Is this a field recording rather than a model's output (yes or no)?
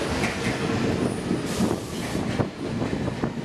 yes